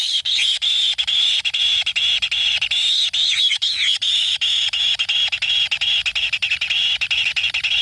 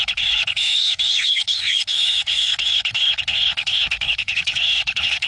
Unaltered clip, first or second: first